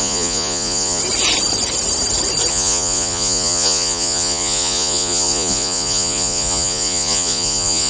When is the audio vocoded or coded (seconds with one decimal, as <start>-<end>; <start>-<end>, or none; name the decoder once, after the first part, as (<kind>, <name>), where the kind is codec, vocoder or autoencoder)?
0.0-1.0 (vocoder, Vocos); 2.5-7.9

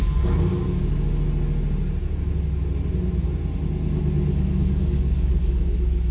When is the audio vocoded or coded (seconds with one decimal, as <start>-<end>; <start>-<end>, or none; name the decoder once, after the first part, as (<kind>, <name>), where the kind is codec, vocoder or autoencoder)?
0.0-0.6 (codec, DAC); 4.3-6.1

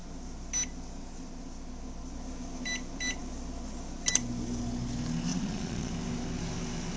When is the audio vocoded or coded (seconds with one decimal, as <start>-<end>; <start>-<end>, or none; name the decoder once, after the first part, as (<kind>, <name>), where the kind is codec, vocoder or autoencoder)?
5.3-5.9 (vocoder, Vocos)

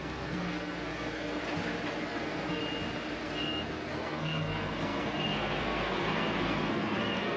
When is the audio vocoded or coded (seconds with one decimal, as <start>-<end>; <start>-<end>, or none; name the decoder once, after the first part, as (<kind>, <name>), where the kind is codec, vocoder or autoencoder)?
0.0-1.4 (codec, SNAC); 2.0-2.6; 3.2-7.4

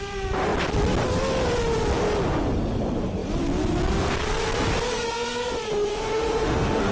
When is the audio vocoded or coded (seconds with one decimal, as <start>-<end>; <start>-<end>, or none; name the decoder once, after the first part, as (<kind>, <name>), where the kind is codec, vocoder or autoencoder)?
5.9-6.9 (autoencoder, DAC-VAE)